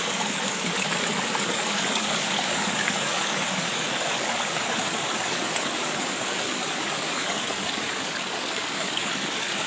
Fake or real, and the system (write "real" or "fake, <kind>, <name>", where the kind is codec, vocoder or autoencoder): fake, codec, DAC